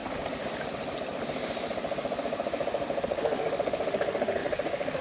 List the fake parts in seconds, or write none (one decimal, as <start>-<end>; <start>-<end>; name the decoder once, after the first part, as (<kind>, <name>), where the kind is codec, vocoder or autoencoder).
3.0-5.0 (autoencoder, DAC-VAE)